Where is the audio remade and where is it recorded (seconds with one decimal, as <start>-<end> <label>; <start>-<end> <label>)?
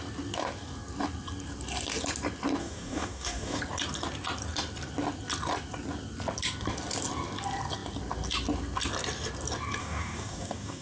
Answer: 0.0-2.6 recorded; 2.6-3.6 remade; 3.6-9.8 recorded; 9.8-10.8 remade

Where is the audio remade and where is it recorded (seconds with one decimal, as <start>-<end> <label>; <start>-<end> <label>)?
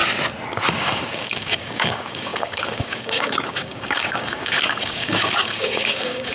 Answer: 0.0-0.7 recorded; 0.7-6.3 remade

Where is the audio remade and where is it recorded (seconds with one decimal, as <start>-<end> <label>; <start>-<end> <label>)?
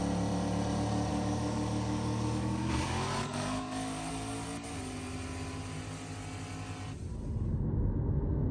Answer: 0.0-1.1 recorded; 1.1-4.1 remade; 4.1-8.5 recorded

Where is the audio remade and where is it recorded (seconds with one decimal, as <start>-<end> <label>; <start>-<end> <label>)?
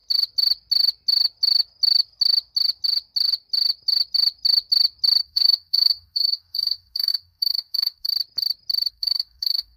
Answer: 0.0-5.2 recorded; 5.2-8.1 remade; 8.1-8.9 recorded; 8.9-9.8 remade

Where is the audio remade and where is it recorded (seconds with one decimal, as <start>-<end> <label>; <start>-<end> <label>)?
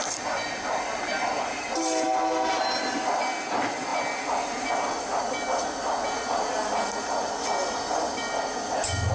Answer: 0.0-9.1 recorded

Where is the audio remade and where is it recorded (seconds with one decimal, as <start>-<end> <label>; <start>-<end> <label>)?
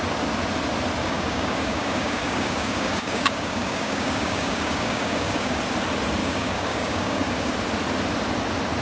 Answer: 0.0-1.0 recorded; 1.0-5.6 remade; 5.6-6.2 recorded; 6.2-7.5 remade; 7.5-8.8 recorded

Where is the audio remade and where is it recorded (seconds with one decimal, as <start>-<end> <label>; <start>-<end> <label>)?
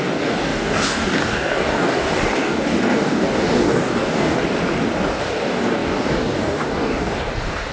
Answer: 0.0-4.4 remade; 4.4-5.2 recorded; 5.2-7.7 remade